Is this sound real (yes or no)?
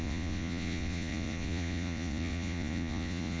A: no